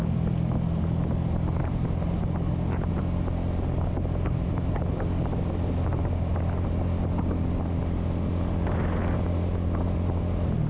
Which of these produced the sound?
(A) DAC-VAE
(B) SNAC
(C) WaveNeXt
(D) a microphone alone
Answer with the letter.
D